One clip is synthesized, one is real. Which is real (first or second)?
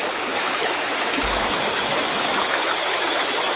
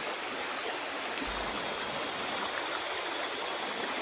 second